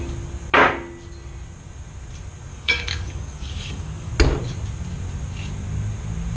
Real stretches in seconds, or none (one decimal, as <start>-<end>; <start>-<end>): 0.0-2.5; 4.1-6.4